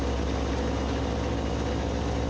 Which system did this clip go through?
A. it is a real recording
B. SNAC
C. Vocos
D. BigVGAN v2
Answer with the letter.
A